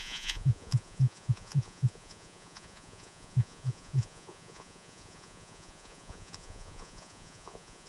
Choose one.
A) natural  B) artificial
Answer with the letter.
B